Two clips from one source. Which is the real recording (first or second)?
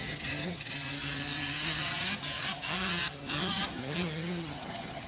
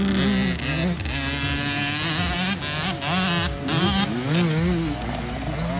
second